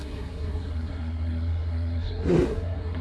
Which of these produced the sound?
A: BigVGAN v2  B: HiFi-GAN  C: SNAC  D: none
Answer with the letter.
C